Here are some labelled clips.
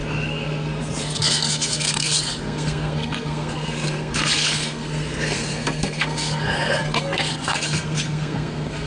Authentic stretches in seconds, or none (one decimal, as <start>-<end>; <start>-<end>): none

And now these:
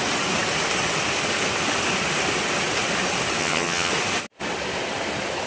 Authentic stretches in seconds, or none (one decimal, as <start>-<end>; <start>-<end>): 0.0-3.4; 3.9-5.5

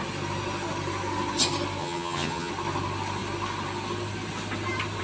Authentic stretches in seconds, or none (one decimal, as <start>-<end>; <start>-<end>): 0.0-1.8; 2.5-5.0

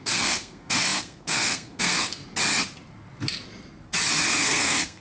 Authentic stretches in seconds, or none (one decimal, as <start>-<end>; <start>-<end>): 2.2-4.3

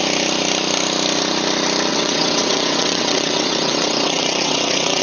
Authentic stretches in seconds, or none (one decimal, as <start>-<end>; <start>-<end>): 0.0-1.9